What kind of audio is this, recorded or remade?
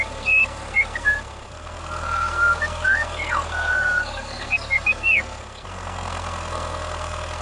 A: remade